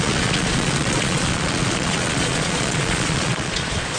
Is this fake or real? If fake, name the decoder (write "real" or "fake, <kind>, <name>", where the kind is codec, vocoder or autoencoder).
fake, vocoder, Vocos